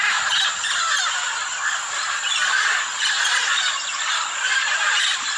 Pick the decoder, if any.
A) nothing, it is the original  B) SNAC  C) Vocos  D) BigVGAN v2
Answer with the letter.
A